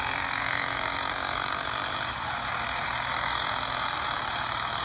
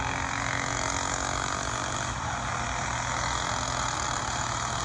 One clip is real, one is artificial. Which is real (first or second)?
second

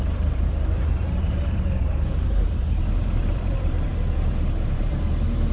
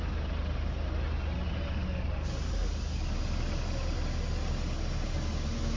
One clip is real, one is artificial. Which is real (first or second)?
second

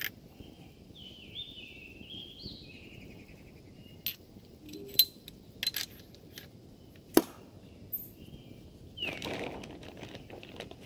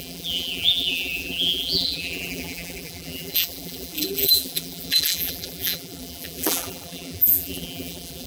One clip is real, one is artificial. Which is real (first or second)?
first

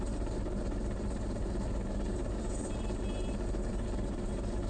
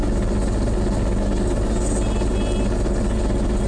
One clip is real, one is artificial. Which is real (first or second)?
second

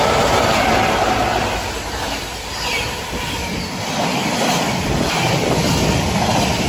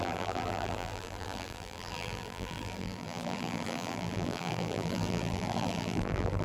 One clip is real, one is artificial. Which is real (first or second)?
first